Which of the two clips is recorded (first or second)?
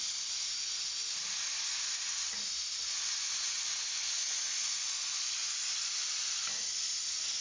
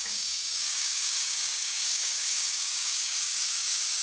first